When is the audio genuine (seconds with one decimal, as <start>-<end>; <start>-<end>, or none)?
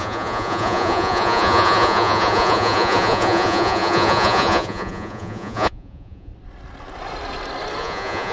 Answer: 6.3-7.8